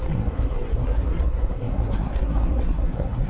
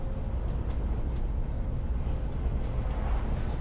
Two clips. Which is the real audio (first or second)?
second